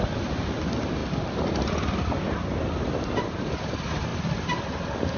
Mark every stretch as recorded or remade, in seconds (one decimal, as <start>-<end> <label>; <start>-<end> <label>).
0.0-5.2 recorded